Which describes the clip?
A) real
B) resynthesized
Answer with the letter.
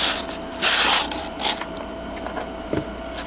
B